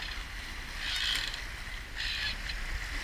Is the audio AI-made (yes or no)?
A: no